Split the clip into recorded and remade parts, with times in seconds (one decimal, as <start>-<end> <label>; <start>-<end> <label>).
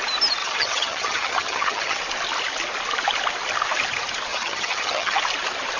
0.0-0.4 recorded; 0.4-2.0 remade; 2.0-4.3 recorded; 4.3-5.2 remade; 5.2-5.8 recorded